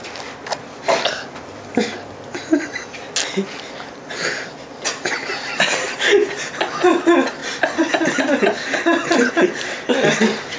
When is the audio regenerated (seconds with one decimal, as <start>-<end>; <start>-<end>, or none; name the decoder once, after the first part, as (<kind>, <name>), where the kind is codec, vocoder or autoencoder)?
none